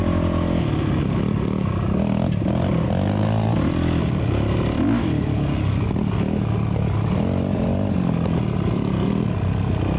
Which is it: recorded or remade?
recorded